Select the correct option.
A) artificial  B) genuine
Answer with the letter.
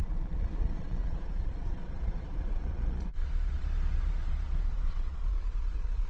A